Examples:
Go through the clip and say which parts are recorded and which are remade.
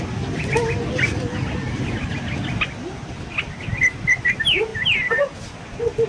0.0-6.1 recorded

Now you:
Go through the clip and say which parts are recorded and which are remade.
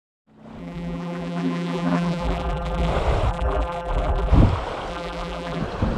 0.0-0.6 recorded; 0.6-2.9 remade; 2.9-3.3 recorded; 3.3-4.3 remade; 4.3-4.9 recorded; 4.9-5.6 remade; 5.6-6.0 recorded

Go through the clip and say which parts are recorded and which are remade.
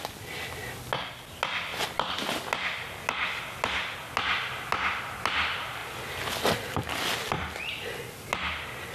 0.0-8.9 recorded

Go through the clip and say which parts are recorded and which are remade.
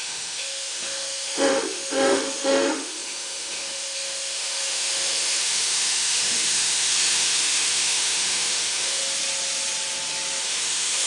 0.0-9.0 remade; 9.0-10.4 recorded; 10.4-11.1 remade